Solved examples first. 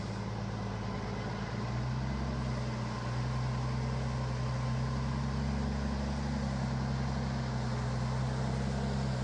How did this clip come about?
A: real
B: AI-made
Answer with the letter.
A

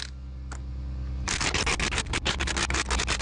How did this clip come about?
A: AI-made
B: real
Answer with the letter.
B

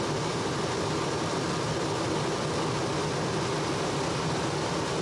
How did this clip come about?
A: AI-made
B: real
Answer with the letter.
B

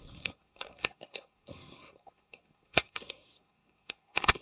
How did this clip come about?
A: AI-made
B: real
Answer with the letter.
A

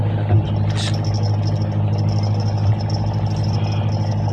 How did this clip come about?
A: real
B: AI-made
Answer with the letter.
A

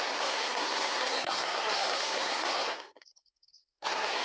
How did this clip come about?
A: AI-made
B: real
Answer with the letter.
A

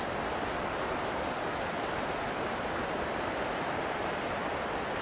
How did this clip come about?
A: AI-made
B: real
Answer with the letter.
B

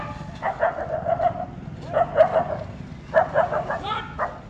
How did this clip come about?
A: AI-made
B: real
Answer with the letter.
B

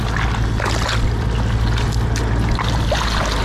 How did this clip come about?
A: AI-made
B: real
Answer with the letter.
B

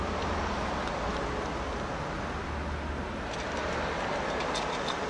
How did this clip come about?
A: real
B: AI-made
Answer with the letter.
A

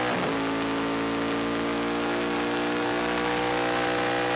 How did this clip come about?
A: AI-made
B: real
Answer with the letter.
B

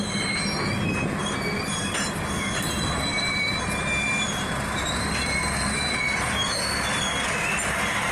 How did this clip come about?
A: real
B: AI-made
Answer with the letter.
A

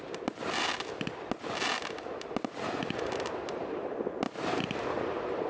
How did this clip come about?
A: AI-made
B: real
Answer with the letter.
B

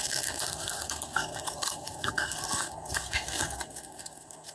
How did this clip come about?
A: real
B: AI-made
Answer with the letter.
B